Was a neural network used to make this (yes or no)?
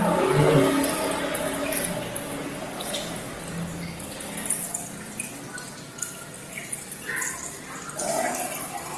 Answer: no